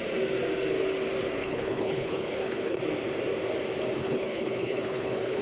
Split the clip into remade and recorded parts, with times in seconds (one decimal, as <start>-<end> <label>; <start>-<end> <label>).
0.0-1.4 recorded; 1.4-2.8 remade; 2.8-4.0 recorded; 4.0-5.4 remade